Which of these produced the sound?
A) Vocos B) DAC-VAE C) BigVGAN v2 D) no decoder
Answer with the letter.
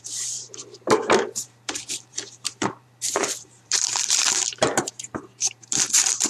C